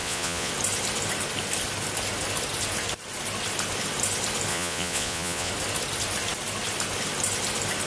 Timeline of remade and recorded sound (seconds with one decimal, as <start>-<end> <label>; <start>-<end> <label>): 0.0-0.5 remade; 0.5-4.5 recorded; 4.5-5.5 remade; 5.5-7.9 recorded